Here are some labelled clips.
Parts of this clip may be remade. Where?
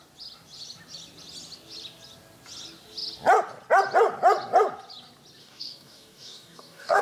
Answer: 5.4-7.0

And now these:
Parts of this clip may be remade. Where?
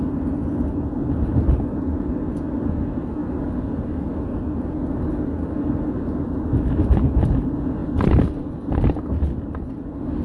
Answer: 3.2-4.1; 7.8-8.7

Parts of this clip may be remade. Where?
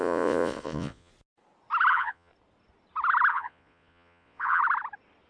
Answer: 0.0-1.1; 1.9-2.3; 3.3-4.6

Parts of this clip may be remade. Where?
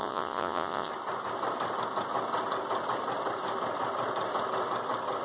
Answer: 0.0-0.9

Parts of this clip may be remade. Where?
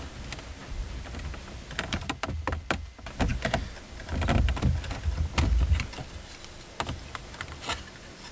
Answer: none